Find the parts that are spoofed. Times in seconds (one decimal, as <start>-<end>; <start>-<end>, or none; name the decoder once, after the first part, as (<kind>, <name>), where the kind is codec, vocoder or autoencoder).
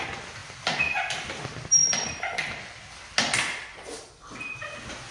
none